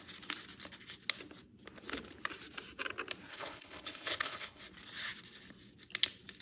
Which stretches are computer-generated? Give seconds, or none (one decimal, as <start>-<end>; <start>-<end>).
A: 3.3-4.6